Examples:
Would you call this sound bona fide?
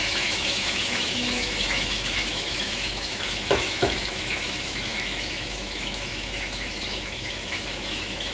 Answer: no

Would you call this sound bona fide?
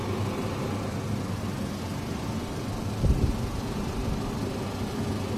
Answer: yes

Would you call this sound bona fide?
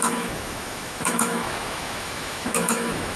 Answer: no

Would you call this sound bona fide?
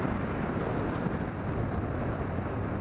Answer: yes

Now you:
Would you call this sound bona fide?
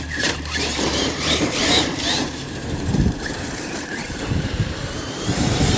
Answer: no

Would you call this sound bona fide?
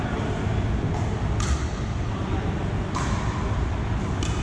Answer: yes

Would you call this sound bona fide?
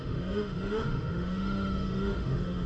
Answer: no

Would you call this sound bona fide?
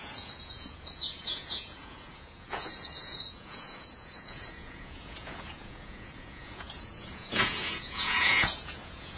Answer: no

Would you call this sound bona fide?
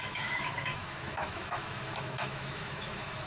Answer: no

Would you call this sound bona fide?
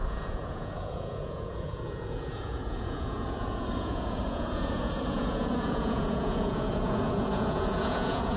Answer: no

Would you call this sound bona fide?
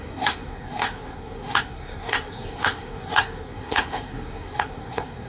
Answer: no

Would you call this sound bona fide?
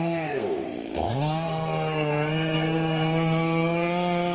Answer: no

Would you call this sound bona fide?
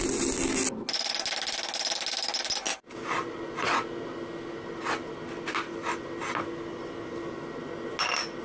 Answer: yes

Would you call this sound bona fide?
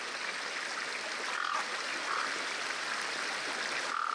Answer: yes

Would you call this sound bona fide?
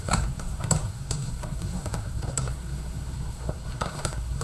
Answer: no